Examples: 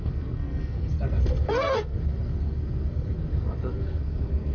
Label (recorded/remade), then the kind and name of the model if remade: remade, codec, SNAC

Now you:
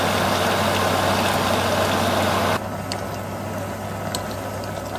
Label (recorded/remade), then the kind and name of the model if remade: recorded